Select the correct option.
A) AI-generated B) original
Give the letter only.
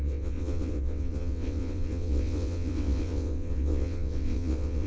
A